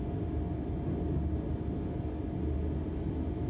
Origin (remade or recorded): recorded